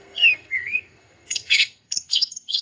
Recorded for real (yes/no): no